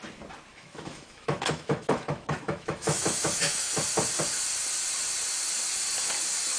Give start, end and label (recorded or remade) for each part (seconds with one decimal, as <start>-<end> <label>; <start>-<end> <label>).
0.0-0.5 recorded; 0.5-3.7 remade; 3.7-6.6 recorded